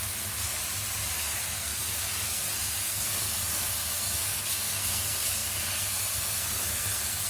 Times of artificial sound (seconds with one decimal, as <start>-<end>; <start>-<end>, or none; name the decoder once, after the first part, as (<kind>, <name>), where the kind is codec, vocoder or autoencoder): 0.0-0.6 (codec, SNAC); 1.2-7.3